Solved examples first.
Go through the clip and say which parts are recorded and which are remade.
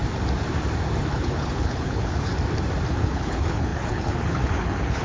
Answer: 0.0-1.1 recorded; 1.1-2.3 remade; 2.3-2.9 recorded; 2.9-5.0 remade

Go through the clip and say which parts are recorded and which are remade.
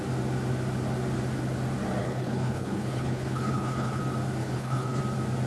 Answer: 0.0-2.0 recorded; 2.0-4.0 remade; 4.0-4.4 recorded; 4.4-5.0 remade; 5.0-5.5 recorded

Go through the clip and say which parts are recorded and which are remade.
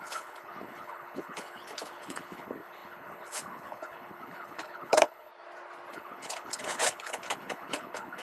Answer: 0.0-5.3 remade; 5.3-5.9 recorded; 5.9-8.2 remade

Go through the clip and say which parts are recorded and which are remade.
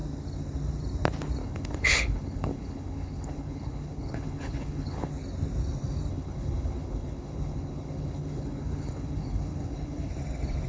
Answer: 0.0-1.4 recorded; 1.4-5.1 remade; 5.1-6.1 recorded; 6.1-10.1 remade; 10.1-10.7 recorded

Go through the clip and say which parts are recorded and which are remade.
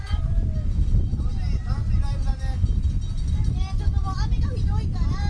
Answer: 0.0-5.3 recorded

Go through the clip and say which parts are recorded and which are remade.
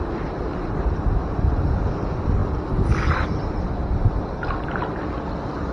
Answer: 0.0-5.7 recorded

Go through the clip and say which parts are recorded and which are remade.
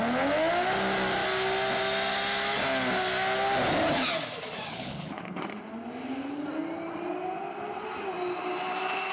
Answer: 0.0-4.7 recorded; 4.7-5.4 remade; 5.4-9.1 recorded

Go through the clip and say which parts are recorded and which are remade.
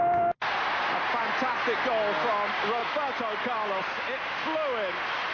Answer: 0.0-5.3 recorded